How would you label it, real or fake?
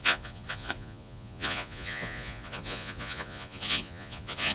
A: fake